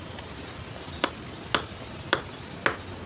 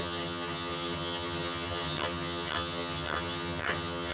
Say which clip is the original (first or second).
first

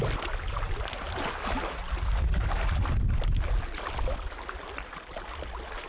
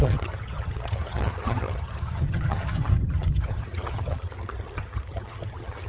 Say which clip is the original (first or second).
first